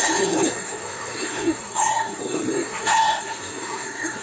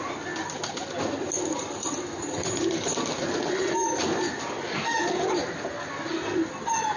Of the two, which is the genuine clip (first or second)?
second